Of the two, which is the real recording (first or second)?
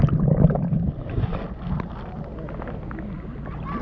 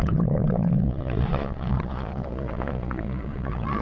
first